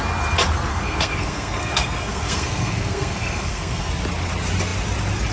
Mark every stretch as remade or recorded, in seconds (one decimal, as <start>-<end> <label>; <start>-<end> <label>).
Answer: 0.0-0.7 recorded; 0.7-3.9 remade; 3.9-5.3 recorded